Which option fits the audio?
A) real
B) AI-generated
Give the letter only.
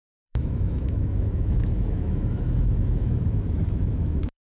B